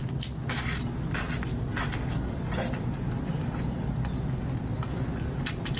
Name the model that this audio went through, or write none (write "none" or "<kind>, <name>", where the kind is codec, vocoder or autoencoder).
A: none